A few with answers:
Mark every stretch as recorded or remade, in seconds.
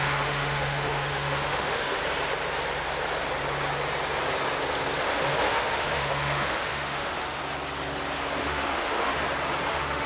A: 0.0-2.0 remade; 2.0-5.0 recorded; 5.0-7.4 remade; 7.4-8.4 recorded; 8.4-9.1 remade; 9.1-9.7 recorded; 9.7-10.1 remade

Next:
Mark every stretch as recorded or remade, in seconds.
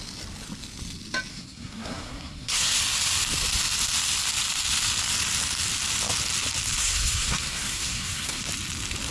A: 0.0-1.3 recorded; 1.3-2.8 remade; 2.8-6.8 recorded; 6.8-8.4 remade; 8.4-9.1 recorded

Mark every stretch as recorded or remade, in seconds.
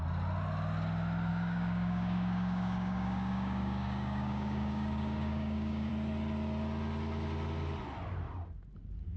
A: 0.0-1.3 recorded; 1.3-5.9 remade; 5.9-9.2 recorded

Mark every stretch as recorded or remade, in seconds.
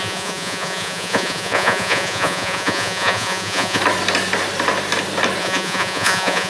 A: 0.0-3.8 remade; 3.8-5.4 recorded; 5.4-6.5 remade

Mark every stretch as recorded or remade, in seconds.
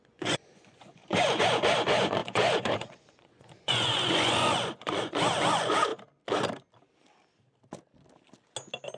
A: 0.0-5.9 remade; 5.9-9.0 recorded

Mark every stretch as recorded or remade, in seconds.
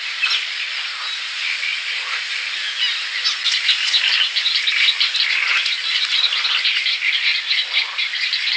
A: 0.0-8.6 recorded